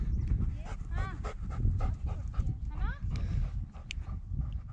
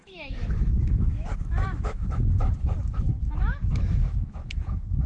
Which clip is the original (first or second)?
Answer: first